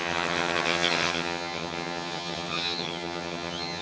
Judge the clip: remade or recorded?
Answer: remade